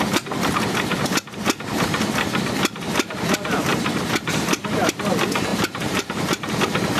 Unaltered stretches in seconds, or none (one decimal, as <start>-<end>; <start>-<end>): 0.0-3.7; 4.3-5.5; 6.6-7.0